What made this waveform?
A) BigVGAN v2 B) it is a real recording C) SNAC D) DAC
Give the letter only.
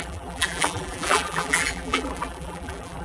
A